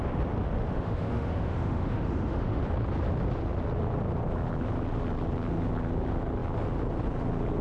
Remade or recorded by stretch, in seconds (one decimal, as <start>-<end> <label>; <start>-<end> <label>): 0.0-0.7 recorded; 0.7-2.6 remade; 2.6-7.6 recorded